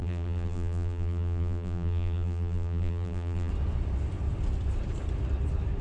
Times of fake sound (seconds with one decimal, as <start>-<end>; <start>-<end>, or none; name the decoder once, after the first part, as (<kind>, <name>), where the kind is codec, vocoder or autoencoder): 0.0-3.5 (vocoder, BigVGAN v2)